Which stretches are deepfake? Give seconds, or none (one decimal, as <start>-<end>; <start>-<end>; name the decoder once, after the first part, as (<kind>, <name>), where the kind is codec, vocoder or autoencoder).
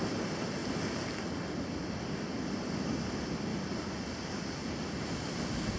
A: 3.5-4.7 (vocoder, BigVGAN v2)